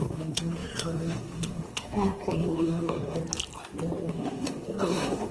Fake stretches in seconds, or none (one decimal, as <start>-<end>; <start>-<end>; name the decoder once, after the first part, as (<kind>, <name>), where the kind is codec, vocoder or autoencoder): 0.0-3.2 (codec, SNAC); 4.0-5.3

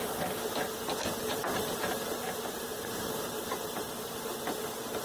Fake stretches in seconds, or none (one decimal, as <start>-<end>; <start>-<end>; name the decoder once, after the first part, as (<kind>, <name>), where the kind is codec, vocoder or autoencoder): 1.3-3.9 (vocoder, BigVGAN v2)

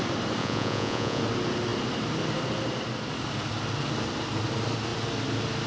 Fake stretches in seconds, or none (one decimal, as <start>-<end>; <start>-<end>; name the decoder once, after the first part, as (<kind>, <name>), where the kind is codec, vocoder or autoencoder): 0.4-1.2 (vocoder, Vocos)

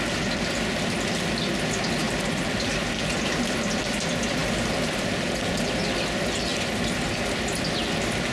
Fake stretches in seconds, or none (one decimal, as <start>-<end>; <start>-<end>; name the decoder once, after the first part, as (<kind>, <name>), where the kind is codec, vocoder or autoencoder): none